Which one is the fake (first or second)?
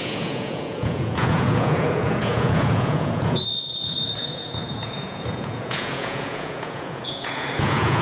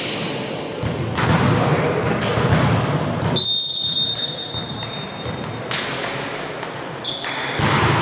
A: first